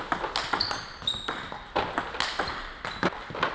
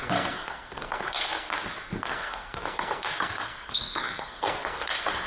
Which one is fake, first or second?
second